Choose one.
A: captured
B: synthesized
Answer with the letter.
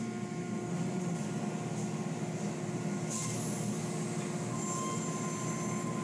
A